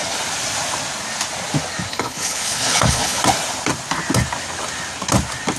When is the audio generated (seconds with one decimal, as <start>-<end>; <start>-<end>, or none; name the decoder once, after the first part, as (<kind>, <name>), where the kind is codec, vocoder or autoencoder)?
1.9-3.2 (codec, HILCodec)